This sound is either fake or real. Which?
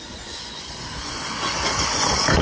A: fake